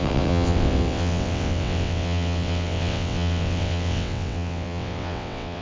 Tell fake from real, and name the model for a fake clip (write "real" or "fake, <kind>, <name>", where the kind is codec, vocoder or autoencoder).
fake, vocoder, WaveNeXt